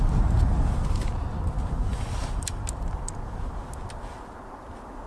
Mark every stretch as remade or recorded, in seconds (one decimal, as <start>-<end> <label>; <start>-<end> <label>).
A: 0.0-1.9 recorded; 1.9-2.6 remade; 2.6-5.1 recorded